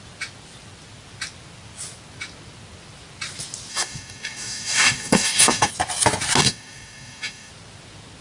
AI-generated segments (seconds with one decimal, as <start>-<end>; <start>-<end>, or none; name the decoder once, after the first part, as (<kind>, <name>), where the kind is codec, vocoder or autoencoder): 3.7-5.7 (codec, DAC); 6.4-7.5